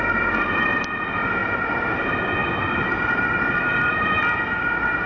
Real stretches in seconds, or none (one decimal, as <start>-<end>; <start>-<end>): 0.0-5.1